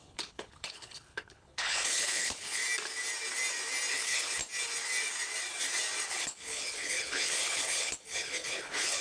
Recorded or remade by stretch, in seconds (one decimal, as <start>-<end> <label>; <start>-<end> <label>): 0.0-2.6 remade; 2.6-3.9 recorded; 3.9-4.4 remade; 4.4-6.1 recorded; 6.1-9.0 remade